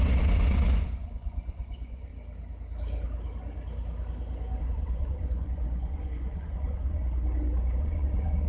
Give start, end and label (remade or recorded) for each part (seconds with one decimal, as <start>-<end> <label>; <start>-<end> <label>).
0.0-2.1 remade; 2.1-4.6 recorded; 4.6-7.0 remade; 7.0-7.8 recorded; 7.8-8.5 remade